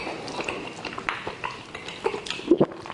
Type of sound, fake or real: real